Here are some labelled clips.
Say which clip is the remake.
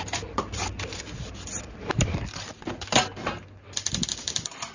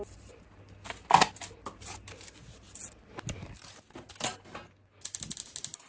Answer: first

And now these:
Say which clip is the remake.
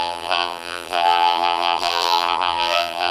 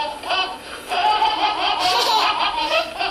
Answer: first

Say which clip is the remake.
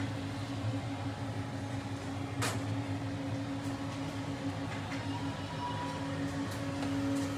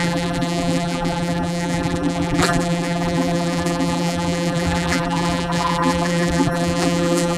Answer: second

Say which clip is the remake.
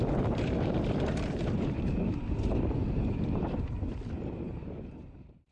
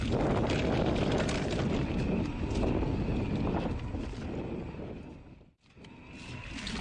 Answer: first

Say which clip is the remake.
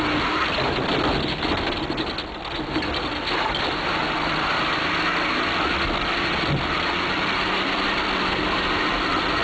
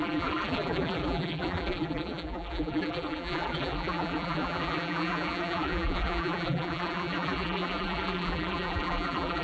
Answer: second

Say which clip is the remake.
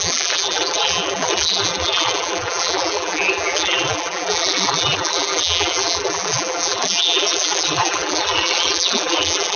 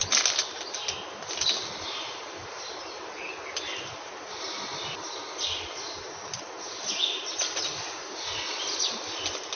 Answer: first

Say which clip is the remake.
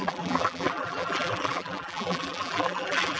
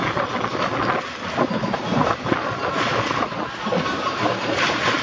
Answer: first